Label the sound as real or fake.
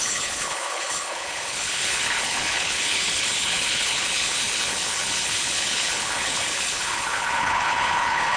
fake